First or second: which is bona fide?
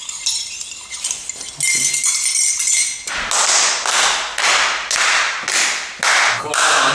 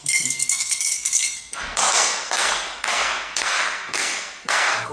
first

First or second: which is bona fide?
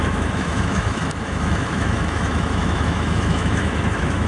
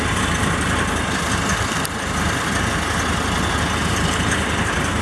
second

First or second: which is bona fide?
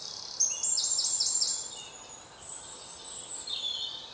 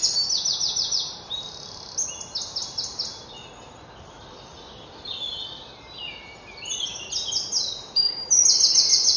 second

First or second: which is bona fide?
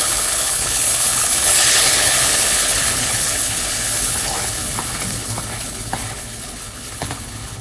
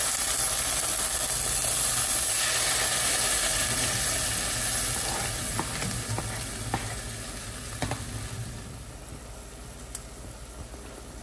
second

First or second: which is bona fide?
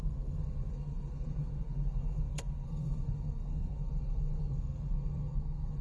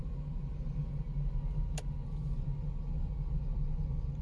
second